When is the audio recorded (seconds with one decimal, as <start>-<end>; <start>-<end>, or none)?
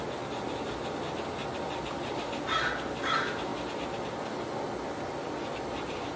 0.0-6.2